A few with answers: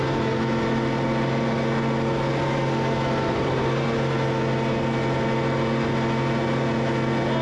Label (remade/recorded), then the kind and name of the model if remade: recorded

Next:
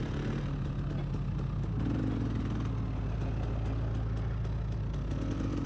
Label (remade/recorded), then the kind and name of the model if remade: recorded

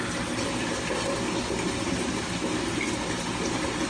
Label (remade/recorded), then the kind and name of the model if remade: recorded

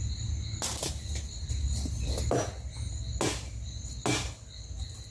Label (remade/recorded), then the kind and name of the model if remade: recorded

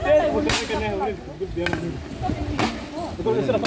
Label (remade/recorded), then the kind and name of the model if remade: recorded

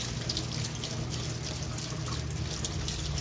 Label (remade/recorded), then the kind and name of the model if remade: recorded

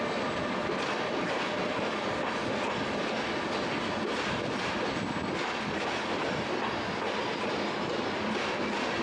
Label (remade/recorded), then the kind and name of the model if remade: recorded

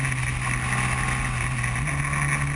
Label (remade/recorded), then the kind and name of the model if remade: recorded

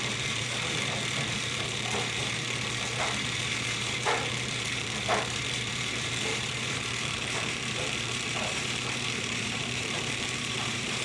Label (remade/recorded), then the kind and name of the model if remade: remade, vocoder, BigVGAN v2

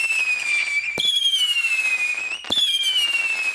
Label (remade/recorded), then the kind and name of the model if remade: recorded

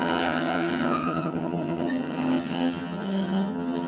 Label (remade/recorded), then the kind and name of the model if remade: remade, vocoder, HiFi-GAN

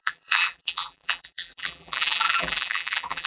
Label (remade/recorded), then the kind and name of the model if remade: remade, vocoder, BigVGAN v2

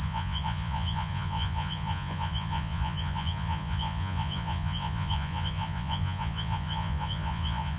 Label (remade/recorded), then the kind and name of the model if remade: remade, vocoder, Vocos